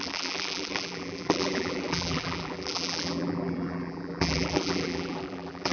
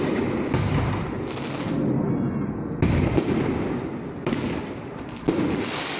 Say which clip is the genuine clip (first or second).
second